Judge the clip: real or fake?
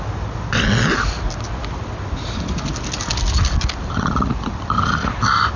real